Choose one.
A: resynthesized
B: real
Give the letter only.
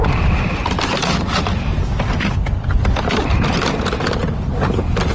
B